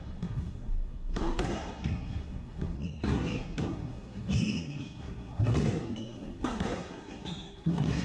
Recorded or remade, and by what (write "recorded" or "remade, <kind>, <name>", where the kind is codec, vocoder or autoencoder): remade, codec, SNAC